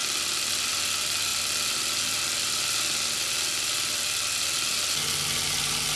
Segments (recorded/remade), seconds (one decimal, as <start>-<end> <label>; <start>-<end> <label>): 0.0-6.0 recorded